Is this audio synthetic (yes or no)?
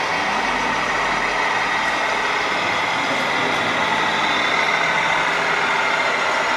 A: no